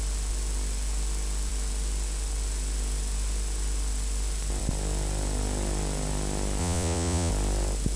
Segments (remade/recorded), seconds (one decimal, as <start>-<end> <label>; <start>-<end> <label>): 0.0-6.6 recorded; 6.6-7.3 remade; 7.3-8.0 recorded